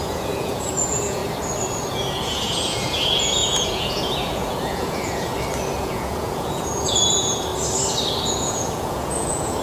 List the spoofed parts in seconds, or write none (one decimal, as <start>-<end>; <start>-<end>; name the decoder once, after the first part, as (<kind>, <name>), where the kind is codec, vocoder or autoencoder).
0.0-1.2 (vocoder, Vocos); 1.9-5.3; 5.8-7.5; 8.3-9.6

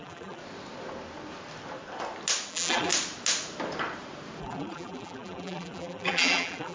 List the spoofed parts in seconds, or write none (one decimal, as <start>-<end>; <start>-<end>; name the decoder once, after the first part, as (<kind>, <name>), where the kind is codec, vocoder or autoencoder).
0.0-0.4 (vocoder, BigVGAN v2); 2.5-2.9; 4.4-6.7

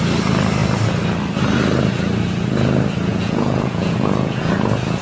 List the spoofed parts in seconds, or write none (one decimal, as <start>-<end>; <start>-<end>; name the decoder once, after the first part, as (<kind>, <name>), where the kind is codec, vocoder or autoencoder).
3.1-4.5 (vocoder, Vocos)